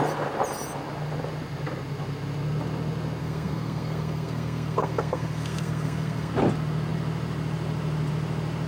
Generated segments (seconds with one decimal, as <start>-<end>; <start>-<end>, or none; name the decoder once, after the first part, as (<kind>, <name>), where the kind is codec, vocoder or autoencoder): 3.2-6.3 (codec, SNAC)